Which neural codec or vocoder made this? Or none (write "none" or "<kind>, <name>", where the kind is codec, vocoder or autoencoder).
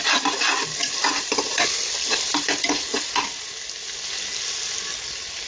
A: none